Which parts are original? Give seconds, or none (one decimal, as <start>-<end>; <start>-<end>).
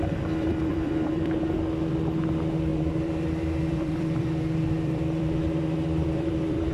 0.0-0.5; 1.3-2.7